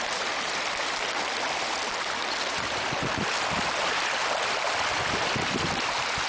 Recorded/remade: remade